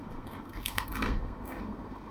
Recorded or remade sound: remade